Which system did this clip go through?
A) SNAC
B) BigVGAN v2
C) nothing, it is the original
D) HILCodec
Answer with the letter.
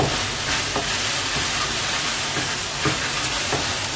C